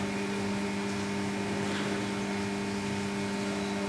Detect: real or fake real